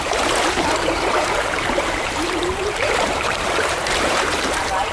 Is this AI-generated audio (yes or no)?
yes